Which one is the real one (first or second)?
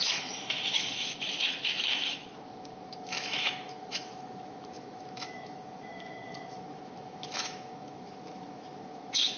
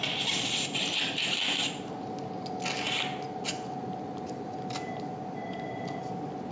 second